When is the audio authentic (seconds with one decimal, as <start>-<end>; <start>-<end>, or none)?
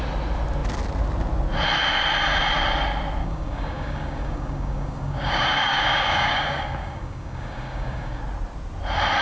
0.0-3.2; 8.2-9.2